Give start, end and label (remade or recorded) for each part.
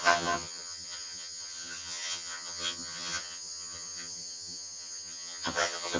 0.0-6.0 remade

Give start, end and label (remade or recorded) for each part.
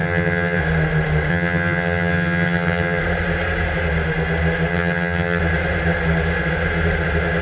0.0-0.6 remade; 0.6-1.3 recorded; 1.3-3.0 remade; 3.0-4.7 recorded; 4.7-5.4 remade; 5.4-7.4 recorded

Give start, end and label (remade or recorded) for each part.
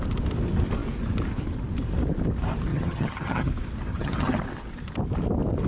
0.0-2.7 recorded; 2.7-3.5 remade; 3.5-3.9 recorded; 3.9-4.4 remade; 4.4-5.7 recorded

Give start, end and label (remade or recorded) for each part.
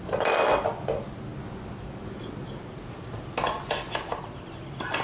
0.0-5.0 recorded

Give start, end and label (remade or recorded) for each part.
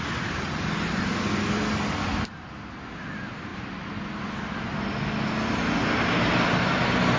0.0-7.2 recorded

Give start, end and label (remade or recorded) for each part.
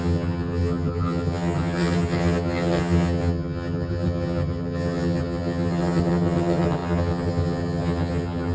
0.0-8.5 remade